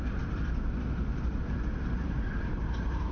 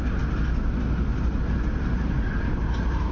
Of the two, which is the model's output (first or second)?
first